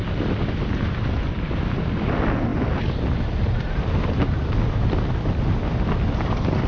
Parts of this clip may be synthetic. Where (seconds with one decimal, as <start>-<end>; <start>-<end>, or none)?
none